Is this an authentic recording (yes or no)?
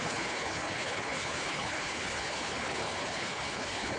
no